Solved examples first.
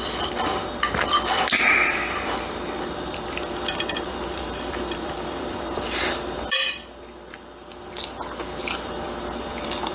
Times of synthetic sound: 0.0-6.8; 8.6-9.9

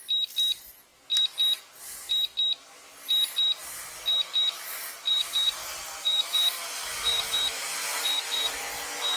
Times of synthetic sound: 4.7-8.5

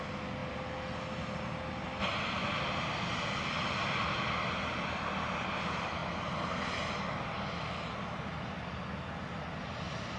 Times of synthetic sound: none

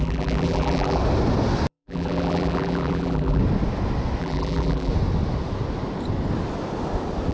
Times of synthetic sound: 0.0-1.0; 1.7-3.4; 4.2-4.9

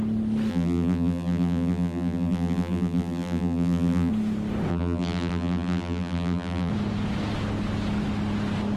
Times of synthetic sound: 0.5-4.1; 4.7-6.7